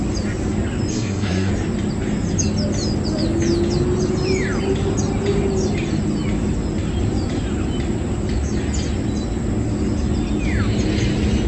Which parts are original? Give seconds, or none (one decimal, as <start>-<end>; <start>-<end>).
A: 0.0-0.9; 1.5-11.5